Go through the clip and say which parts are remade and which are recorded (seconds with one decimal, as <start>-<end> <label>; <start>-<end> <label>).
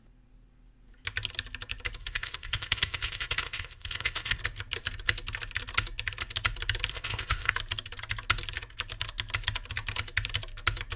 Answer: 0.0-2.0 recorded; 2.0-4.4 remade; 4.4-6.9 recorded; 6.9-7.5 remade; 7.5-11.0 recorded